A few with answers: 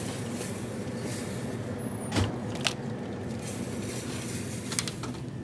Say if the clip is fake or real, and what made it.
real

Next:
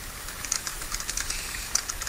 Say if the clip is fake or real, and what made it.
fake, codec, DAC